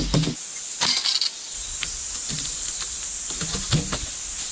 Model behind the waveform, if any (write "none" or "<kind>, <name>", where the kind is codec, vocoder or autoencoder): none